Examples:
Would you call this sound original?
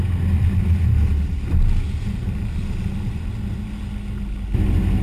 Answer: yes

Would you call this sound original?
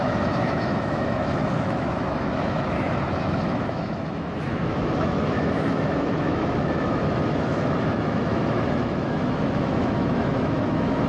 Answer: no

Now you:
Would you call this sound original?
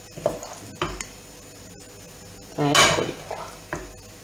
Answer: yes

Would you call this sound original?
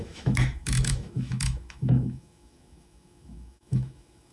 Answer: no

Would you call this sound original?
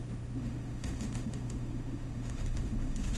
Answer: no